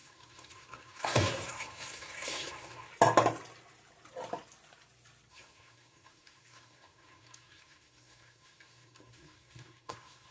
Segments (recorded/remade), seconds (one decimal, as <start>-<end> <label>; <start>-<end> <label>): 0.0-2.9 remade; 2.9-5.3 recorded; 5.3-10.3 remade